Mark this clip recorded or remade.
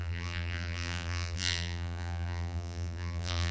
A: remade